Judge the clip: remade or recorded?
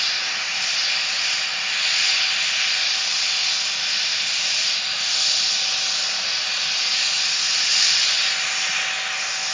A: recorded